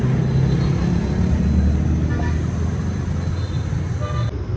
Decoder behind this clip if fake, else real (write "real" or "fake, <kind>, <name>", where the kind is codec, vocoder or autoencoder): real